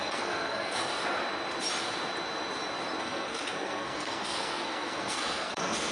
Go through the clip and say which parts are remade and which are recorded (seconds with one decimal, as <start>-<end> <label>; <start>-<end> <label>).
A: 0.0-0.9 remade; 0.9-3.0 recorded; 3.0-5.9 remade